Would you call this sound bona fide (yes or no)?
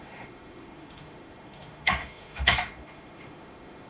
no